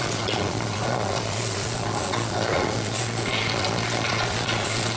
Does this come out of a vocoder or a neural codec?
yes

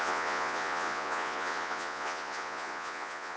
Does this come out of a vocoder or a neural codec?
yes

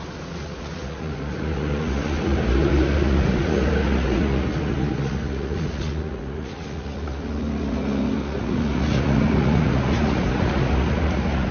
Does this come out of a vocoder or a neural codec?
yes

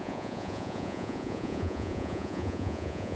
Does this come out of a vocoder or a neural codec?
yes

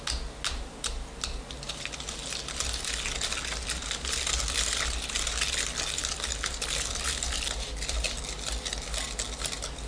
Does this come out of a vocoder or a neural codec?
no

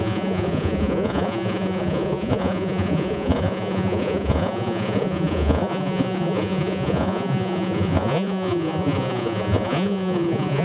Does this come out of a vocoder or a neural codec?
yes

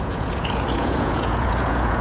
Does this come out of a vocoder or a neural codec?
yes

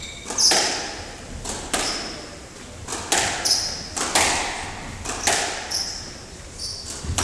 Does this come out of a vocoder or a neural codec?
no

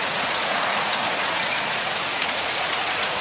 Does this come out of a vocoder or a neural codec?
yes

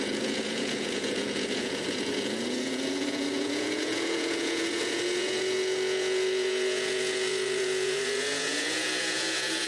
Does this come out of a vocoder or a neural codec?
yes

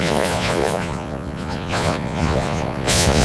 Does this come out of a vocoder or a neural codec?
yes